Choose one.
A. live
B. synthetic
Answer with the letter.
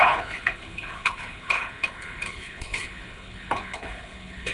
B